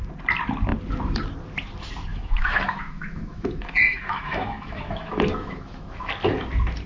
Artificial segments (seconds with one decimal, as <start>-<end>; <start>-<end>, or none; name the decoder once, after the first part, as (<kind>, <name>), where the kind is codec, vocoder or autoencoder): 2.1-6.1 (autoencoder, DAC-VAE)